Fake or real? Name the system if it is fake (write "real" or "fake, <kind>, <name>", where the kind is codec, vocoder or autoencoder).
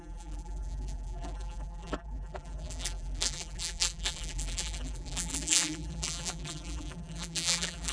fake, vocoder, BigVGAN v2